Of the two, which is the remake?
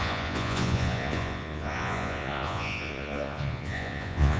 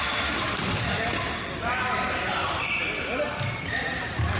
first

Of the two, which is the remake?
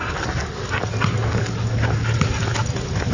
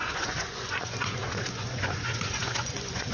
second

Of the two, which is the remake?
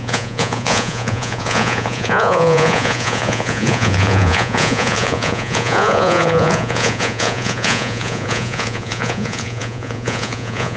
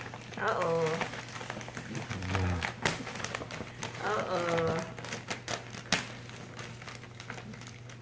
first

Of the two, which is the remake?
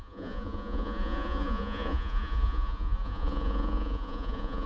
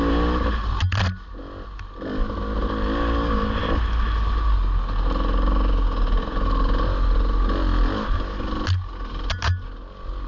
first